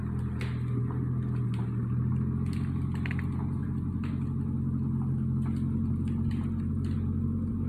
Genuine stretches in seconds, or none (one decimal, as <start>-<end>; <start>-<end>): 0.0-7.7